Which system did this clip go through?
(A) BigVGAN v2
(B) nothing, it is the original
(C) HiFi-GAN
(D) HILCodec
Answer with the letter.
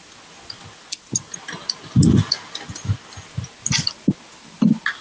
B